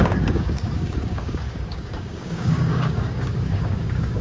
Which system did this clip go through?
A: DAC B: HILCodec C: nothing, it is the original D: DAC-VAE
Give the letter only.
A